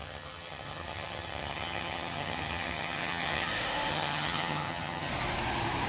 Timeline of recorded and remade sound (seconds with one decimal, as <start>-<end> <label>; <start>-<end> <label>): 0.0-3.5 remade; 3.5-3.9 recorded; 3.9-5.1 remade; 5.1-5.9 recorded